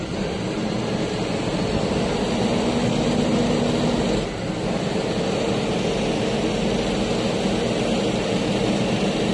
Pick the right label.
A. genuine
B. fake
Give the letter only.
A